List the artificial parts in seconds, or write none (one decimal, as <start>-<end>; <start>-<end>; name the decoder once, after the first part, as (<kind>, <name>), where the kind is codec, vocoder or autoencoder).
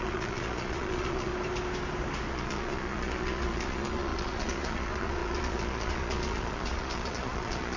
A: 0.0-1.3 (vocoder, Vocos); 2.3-7.8